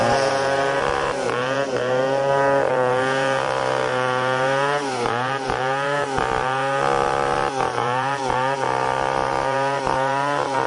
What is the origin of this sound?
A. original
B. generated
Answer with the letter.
B